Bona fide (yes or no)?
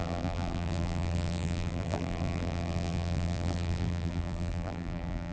no